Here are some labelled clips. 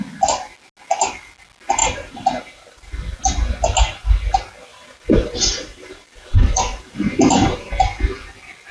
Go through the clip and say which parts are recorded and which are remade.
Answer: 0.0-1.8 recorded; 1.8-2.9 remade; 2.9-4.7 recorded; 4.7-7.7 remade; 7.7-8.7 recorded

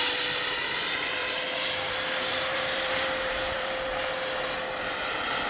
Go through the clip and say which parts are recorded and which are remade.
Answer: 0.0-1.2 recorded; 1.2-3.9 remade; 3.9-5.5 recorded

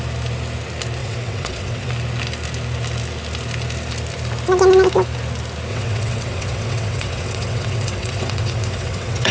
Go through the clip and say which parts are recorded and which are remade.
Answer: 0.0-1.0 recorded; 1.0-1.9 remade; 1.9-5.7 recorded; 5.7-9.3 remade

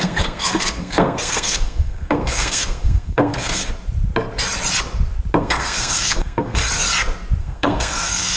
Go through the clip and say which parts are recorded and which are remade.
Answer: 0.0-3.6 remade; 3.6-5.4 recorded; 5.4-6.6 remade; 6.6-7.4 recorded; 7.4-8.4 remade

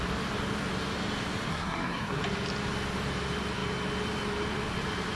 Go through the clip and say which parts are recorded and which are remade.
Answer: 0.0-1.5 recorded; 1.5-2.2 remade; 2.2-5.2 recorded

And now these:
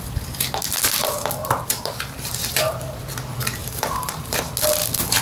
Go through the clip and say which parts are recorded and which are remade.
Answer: 0.0-1.4 recorded; 1.4-3.0 remade; 3.0-3.6 recorded; 3.6-4.3 remade; 4.3-5.2 recorded

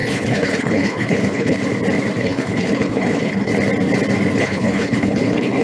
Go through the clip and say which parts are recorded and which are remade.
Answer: 0.0-1.6 remade; 1.6-2.2 recorded; 2.2-3.5 remade; 3.5-4.4 recorded; 4.4-5.6 remade